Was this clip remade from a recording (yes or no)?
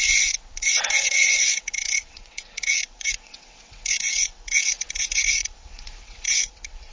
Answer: yes